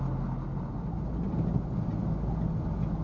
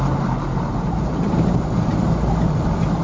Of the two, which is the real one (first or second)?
first